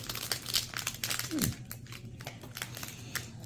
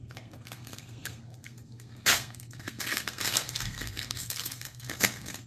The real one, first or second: first